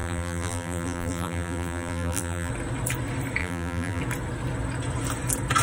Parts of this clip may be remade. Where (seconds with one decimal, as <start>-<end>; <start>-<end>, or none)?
0.0-2.5; 3.4-4.0